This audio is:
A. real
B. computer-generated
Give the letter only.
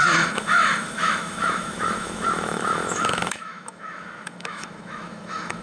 B